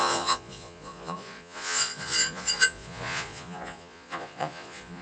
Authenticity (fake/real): fake